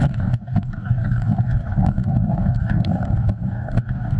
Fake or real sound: fake